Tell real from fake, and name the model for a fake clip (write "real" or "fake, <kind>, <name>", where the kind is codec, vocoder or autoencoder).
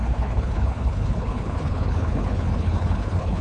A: fake, codec, HILCodec